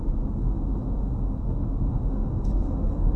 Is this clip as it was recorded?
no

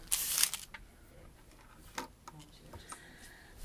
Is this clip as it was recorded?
yes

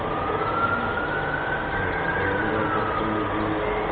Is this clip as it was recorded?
yes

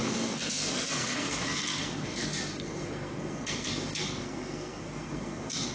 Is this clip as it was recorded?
no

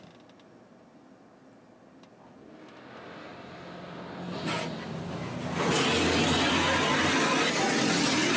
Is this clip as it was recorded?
yes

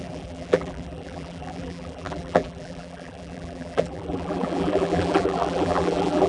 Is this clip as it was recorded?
no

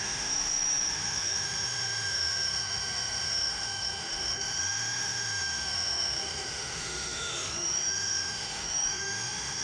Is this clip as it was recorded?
no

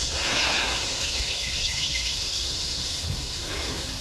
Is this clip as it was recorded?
no